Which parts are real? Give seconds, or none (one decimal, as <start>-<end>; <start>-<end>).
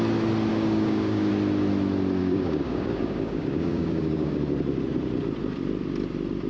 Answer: 0.0-0.5; 1.3-2.2; 4.3-6.5